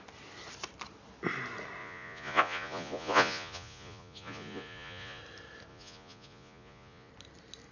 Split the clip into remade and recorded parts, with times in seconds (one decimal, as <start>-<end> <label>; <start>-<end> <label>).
0.0-1.8 recorded; 1.8-5.2 remade; 5.2-5.7 recorded; 5.7-7.1 remade; 7.1-7.7 recorded